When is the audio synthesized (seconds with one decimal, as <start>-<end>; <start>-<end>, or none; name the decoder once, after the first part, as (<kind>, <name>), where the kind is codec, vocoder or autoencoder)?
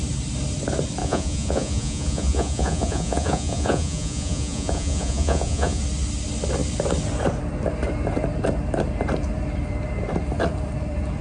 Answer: 1.0-5.8 (vocoder, Vocos)